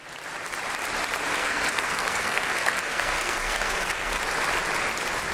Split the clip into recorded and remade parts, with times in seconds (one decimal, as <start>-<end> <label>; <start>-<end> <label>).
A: 0.0-1.4 recorded; 1.4-4.2 remade; 4.2-5.3 recorded